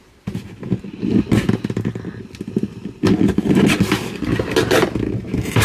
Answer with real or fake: real